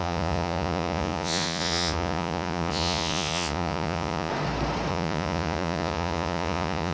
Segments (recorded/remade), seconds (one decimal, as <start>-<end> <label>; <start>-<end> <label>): 0.0-4.3 remade; 4.3-4.9 recorded; 4.9-6.9 remade